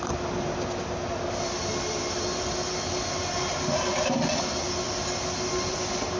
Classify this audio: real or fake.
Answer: real